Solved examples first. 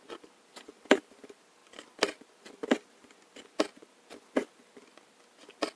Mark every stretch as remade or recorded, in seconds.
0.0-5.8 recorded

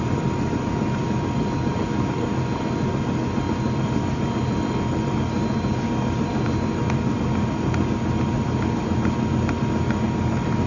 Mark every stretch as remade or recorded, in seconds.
0.0-10.7 recorded

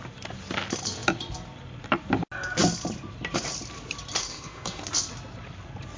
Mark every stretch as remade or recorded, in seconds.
0.0-4.2 recorded; 4.2-4.8 remade; 4.8-6.0 recorded

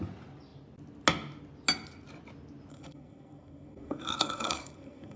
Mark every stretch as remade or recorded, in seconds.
0.0-2.7 recorded; 2.7-5.2 remade

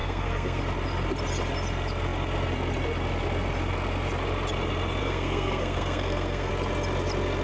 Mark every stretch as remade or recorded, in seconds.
0.0-0.6 remade; 0.6-5.0 recorded; 5.0-6.5 remade; 6.5-7.4 recorded

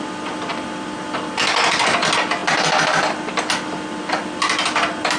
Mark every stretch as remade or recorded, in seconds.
0.0-5.2 recorded